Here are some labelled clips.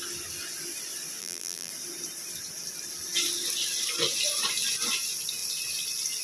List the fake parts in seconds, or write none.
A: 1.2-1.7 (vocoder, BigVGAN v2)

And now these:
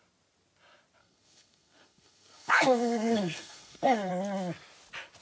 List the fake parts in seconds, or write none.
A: 1.0-4.1 (codec, SNAC)

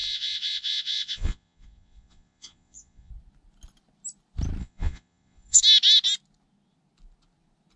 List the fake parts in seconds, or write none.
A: 0.0-3.1 (vocoder, Vocos); 4.6-5.6

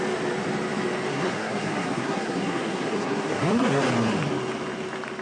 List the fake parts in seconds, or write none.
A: 1.1-3.8 (codec, SNAC)

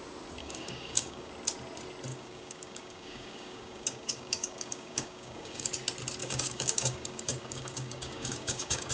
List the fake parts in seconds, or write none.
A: 0.4-1.3 (codec, DAC); 2.1-5.7; 6.2-8.9

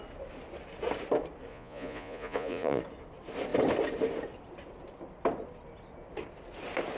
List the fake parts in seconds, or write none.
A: 1.5-2.8 (vocoder, Vocos)